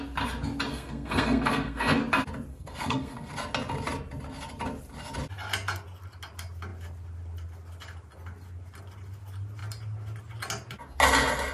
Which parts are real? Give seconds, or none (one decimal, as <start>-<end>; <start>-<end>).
0.0-0.7; 2.0-2.5; 3.3-11.5